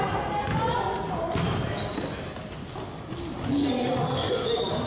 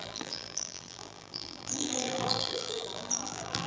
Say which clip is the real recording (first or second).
first